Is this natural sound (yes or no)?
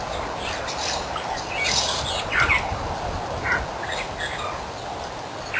yes